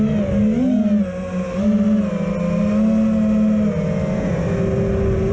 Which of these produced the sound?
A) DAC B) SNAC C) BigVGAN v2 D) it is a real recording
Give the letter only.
D